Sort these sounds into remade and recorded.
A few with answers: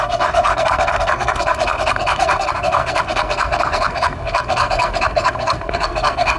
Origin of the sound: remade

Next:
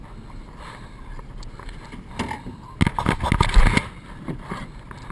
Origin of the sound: recorded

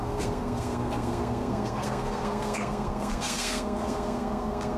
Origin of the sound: remade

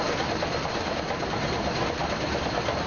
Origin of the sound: recorded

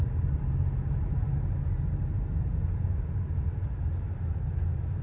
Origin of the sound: recorded